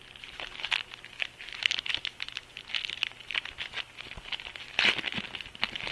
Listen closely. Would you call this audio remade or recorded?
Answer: recorded